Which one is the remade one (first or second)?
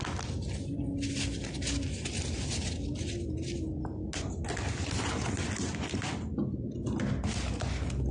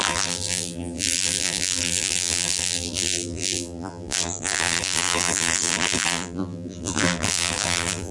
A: second